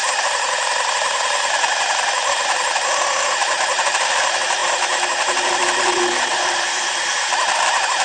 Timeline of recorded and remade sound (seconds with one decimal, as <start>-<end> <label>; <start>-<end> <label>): 0.0-8.0 recorded